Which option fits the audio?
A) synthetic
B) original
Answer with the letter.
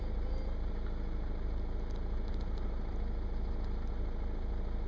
B